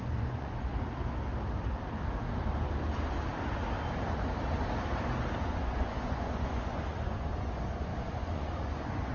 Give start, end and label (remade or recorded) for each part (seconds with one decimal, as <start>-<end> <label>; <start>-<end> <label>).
0.0-0.7 remade; 0.7-5.4 recorded; 5.4-9.1 remade